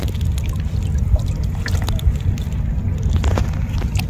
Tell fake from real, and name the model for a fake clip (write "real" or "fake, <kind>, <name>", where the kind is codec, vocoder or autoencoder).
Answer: real